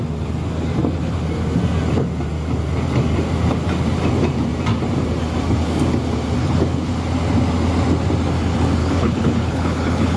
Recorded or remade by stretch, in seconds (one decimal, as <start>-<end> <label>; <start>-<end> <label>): 0.0-6.4 recorded; 6.4-6.9 remade; 6.9-8.8 recorded; 8.8-10.2 remade